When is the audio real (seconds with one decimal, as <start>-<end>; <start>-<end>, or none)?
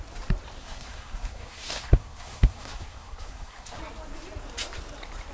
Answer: 0.0-0.6; 3.8-5.3